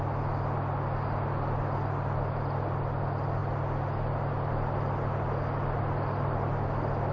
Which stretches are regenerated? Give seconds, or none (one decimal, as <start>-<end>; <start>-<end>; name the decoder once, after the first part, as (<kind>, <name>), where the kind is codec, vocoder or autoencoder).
none